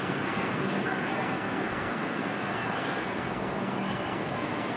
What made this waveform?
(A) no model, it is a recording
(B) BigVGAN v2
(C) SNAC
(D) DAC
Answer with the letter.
C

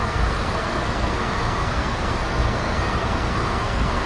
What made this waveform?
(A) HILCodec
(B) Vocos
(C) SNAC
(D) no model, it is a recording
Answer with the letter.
C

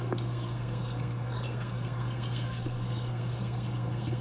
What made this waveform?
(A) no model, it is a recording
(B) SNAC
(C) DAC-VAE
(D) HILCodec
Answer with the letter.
B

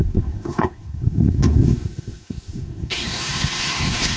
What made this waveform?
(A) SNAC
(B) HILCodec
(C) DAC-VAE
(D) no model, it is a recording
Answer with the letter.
A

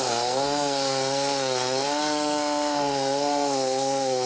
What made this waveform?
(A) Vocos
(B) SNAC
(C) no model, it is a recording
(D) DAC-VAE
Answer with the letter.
B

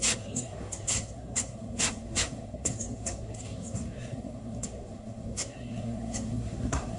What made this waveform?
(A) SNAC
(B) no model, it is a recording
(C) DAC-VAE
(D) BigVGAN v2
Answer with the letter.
A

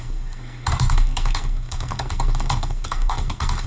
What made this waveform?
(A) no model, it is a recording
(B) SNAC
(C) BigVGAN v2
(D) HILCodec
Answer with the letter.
B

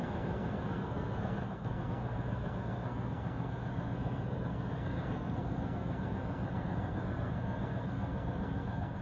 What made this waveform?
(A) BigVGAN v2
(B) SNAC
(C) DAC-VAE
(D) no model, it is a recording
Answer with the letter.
B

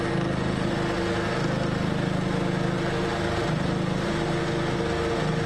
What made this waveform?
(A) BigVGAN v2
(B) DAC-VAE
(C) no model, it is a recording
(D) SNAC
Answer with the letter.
C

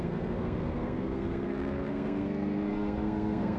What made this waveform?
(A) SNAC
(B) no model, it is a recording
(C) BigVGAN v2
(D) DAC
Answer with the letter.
A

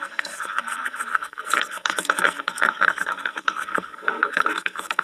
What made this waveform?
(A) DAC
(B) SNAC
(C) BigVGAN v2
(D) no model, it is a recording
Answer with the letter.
B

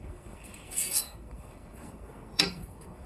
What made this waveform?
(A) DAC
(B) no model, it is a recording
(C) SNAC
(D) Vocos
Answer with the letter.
C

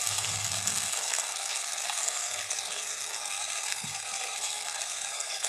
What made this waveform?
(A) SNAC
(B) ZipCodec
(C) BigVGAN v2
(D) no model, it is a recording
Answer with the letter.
A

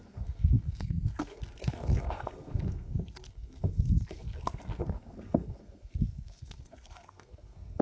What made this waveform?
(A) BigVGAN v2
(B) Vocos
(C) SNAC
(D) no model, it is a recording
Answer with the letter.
C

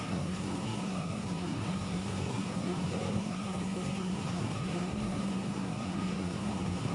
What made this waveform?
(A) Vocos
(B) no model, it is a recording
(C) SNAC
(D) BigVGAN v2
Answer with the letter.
C